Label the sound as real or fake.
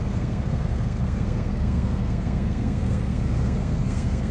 fake